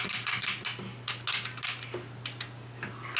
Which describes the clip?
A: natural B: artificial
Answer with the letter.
A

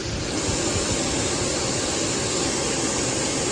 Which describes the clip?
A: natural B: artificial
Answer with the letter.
A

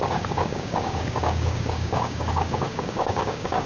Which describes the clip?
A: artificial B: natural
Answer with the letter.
A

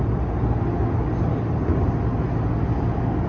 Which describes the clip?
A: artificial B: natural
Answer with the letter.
B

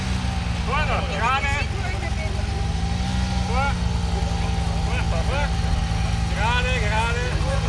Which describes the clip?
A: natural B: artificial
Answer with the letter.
A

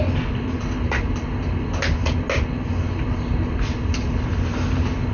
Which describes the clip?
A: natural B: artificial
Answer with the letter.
A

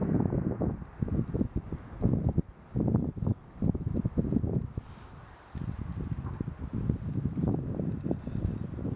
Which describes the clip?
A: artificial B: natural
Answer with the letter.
B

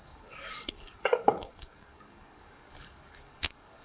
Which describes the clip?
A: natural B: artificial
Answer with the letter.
B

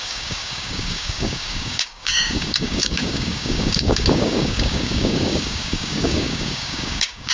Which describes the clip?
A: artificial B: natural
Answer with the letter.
A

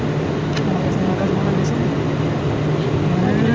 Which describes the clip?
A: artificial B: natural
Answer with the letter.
B